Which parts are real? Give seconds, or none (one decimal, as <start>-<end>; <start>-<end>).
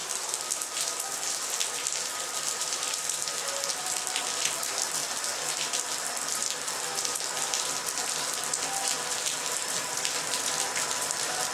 0.0-1.4; 3.2-3.7; 5.0-9.4